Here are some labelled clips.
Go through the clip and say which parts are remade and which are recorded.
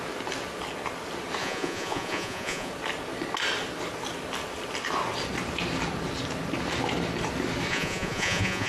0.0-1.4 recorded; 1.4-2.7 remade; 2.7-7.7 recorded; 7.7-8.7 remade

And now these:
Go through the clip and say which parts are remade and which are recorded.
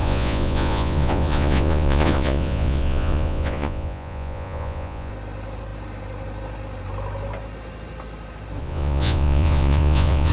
0.0-5.1 remade; 5.1-8.6 recorded; 8.6-10.3 remade